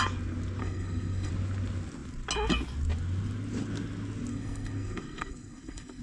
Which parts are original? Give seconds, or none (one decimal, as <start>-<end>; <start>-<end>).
0.0-0.6; 1.3-4.3